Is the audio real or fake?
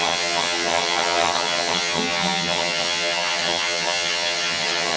fake